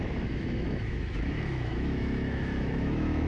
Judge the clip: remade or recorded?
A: remade